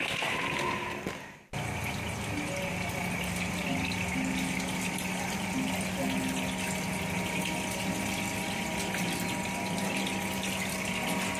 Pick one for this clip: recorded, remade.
recorded